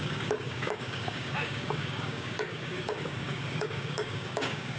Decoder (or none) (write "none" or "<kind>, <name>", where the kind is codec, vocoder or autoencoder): codec, DAC